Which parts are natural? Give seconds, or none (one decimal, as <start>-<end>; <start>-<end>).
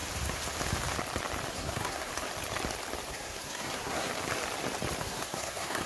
0.0-1.5; 2.1-3.1; 4.1-5.0